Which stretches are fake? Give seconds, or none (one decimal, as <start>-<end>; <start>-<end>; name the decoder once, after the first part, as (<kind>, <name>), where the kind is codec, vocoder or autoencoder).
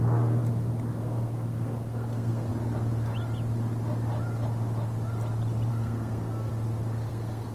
0.0-0.4 (codec, SNAC); 1.0-2.5; 5.7-6.5; 7.1-7.5